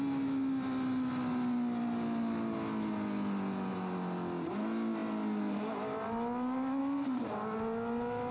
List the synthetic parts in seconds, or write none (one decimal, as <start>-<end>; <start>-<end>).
none